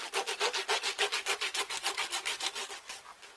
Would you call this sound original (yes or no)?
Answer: yes